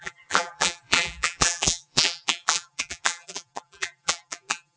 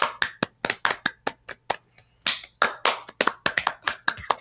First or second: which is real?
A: second